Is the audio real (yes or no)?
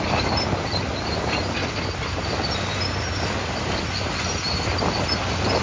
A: yes